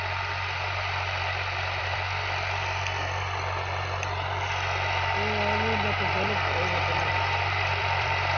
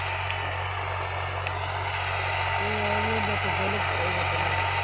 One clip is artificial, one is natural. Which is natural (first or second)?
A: second